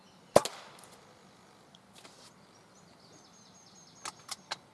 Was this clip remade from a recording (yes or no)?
no